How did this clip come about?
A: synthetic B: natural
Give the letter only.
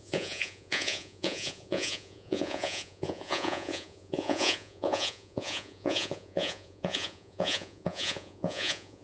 A